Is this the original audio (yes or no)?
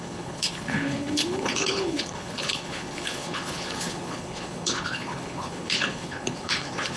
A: no